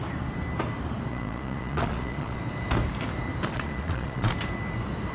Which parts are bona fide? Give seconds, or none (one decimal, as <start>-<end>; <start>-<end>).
0.0-1.1; 2.4-3.5; 4.3-5.1